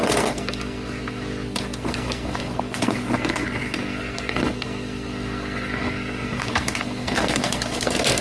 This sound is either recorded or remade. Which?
remade